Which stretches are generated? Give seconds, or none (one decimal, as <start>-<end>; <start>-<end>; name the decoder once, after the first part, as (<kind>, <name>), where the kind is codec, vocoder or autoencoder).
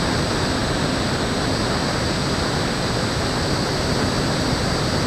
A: none